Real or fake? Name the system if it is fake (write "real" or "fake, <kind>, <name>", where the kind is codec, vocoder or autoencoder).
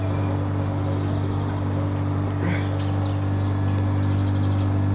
real